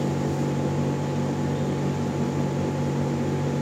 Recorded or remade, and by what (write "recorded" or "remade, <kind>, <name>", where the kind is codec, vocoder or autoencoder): recorded